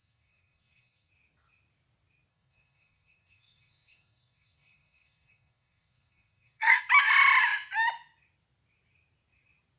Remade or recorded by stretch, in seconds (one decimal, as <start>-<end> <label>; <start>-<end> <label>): 0.0-1.1 remade; 1.1-2.3 recorded; 2.3-6.8 remade; 6.8-9.8 recorded